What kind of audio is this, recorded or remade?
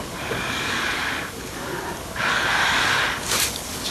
remade